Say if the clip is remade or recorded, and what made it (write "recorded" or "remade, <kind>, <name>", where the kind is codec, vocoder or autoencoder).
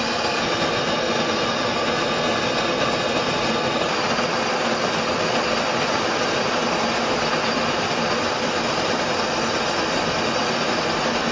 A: recorded